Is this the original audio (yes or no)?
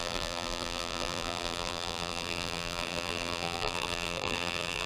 no